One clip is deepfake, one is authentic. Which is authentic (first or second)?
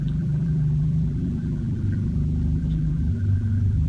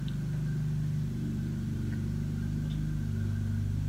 second